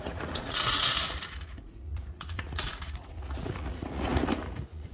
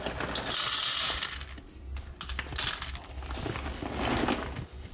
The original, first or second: second